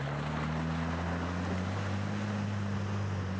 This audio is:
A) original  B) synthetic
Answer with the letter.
A